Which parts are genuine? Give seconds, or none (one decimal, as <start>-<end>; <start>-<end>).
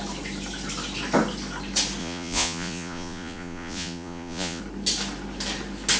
0.0-2.0; 4.6-6.0